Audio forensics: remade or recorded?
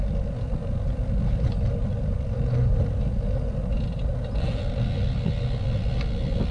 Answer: recorded